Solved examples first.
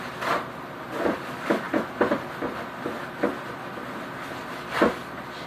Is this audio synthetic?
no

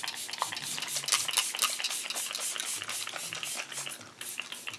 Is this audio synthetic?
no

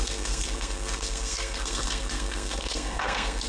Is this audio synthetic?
yes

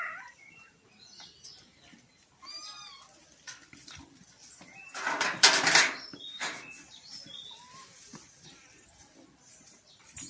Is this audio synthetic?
yes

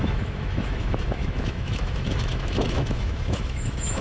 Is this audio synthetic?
yes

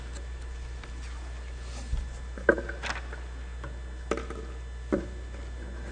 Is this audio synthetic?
no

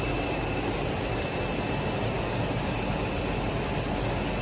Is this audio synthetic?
no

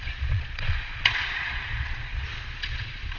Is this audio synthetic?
yes